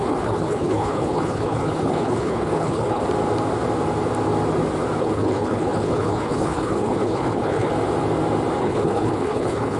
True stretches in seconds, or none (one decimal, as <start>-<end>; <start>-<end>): 3.0-5.0; 7.7-8.6